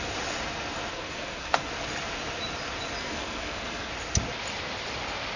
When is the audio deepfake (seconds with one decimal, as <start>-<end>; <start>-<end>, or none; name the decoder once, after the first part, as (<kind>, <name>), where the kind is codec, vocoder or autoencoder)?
0.9-1.7 (codec, SNAC); 3.0-3.9